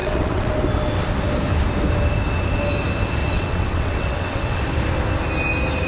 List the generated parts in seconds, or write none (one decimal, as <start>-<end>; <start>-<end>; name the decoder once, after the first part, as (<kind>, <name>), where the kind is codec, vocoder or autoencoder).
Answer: 0.0-0.5 (vocoder, WaveNeXt); 3.2-4.6